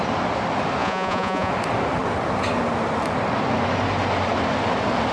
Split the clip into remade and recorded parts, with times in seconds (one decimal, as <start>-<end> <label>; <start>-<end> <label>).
0.0-0.8 recorded; 0.8-1.5 remade; 1.5-5.1 recorded